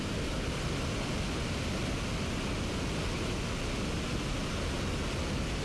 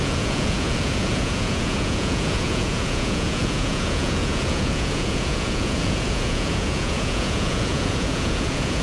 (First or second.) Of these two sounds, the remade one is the second